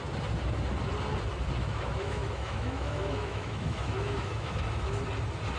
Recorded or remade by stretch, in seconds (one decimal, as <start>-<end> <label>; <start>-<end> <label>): 0.0-1.6 recorded; 1.6-5.0 remade; 5.0-5.6 recorded